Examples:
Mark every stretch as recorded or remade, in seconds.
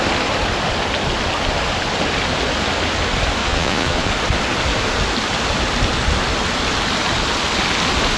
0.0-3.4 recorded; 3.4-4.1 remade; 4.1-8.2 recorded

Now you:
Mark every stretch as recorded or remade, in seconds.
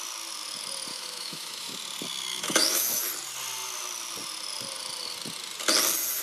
0.0-0.9 recorded; 0.9-1.8 remade; 1.8-2.3 recorded; 2.3-3.0 remade; 3.0-6.2 recorded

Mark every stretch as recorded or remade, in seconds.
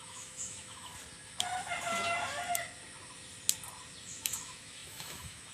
0.0-0.9 remade; 0.9-4.0 recorded; 4.0-5.5 remade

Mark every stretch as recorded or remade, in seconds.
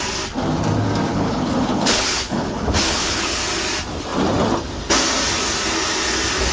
0.0-1.1 recorded; 1.1-3.4 remade; 3.4-6.5 recorded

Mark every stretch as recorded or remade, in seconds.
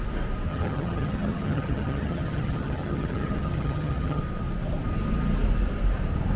0.0-0.5 recorded; 0.5-4.2 remade; 4.2-6.4 recorded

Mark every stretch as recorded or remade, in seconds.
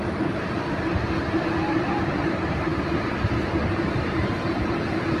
0.0-5.2 recorded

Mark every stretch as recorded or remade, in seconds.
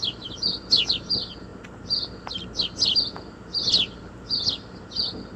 0.0-5.4 recorded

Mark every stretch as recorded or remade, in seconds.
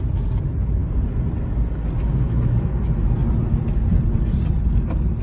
0.0-2.1 recorded; 2.1-2.8 remade; 2.8-5.2 recorded